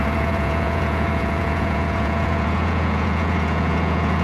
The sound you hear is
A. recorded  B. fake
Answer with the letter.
B